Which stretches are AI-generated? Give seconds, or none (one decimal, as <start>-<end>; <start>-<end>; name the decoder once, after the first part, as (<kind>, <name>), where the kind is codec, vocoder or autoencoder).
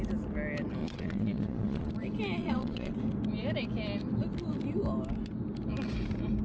0.8-1.9 (vocoder, Vocos); 2.4-2.9